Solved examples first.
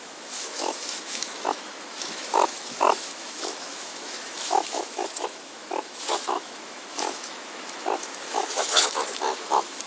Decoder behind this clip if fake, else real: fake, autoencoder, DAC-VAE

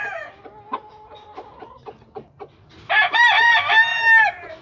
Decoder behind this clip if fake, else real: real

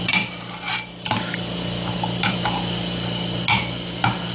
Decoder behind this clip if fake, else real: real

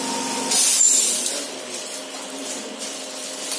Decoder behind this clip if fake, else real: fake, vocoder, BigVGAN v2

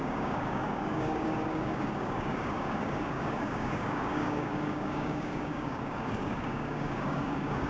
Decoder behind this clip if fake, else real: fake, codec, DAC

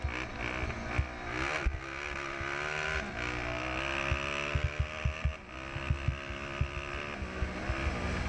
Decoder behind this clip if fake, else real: real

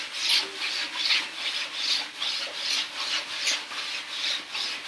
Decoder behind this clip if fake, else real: real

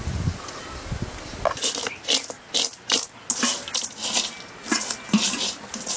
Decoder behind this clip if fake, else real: real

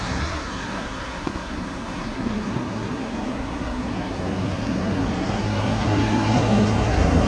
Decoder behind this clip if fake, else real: fake, codec, SNAC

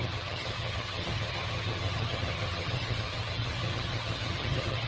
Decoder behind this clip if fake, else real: fake, vocoder, HiFi-GAN